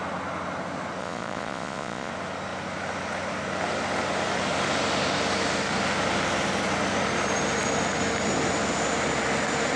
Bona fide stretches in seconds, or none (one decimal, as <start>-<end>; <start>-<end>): 0.0-1.0; 2.1-9.8